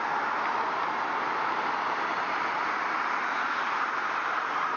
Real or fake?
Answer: real